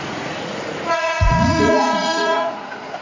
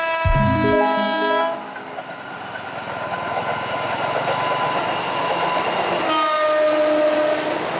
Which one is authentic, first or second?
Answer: second